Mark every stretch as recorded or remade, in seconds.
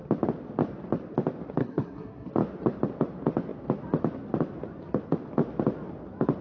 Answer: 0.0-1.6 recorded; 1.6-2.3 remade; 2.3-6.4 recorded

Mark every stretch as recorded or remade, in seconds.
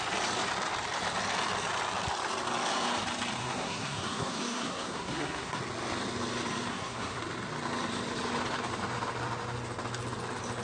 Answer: 0.0-3.4 recorded; 3.4-5.6 remade; 5.6-6.7 recorded; 6.7-7.2 remade; 7.2-10.6 recorded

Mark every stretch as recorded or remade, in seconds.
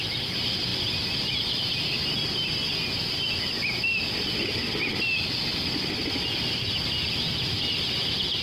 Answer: 0.0-8.4 recorded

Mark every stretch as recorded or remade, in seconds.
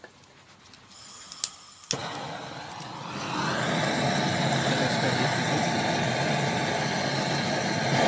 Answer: 0.0-8.1 recorded